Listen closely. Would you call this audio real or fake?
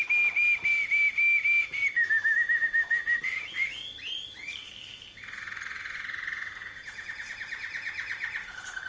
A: real